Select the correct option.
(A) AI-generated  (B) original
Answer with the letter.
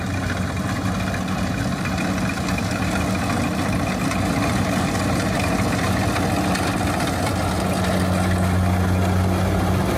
B